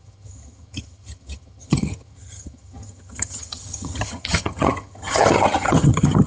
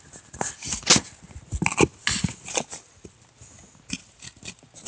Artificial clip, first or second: first